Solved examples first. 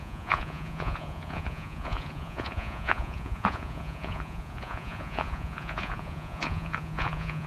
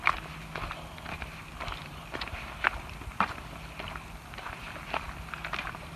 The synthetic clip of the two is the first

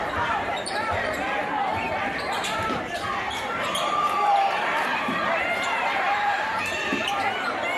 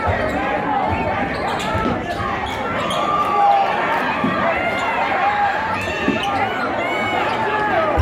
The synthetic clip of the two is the first